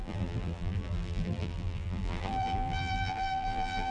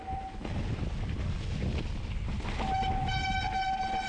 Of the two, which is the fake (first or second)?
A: first